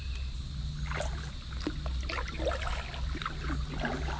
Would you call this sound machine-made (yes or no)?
no